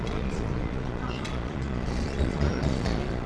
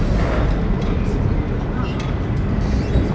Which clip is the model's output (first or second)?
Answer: first